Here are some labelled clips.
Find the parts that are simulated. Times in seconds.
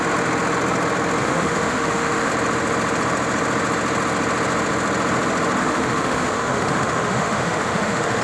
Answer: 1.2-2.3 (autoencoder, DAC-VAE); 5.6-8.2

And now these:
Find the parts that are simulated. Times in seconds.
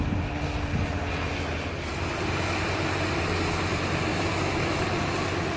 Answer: 4.1-4.8 (autoencoder, DAC-VAE)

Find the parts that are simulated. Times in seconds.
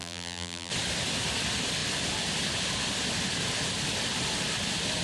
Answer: 0.0-0.7 (vocoder, BigVGAN v2)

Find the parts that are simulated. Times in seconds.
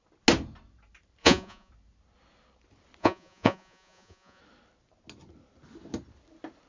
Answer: 1.2-1.7 (vocoder, Vocos); 3.0-4.4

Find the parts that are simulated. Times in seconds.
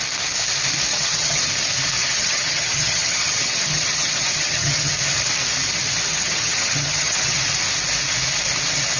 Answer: 0.9-1.5 (vocoder, HiFi-GAN); 2.0-4.9; 6.1-7.4